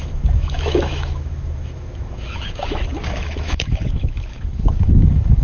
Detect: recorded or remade remade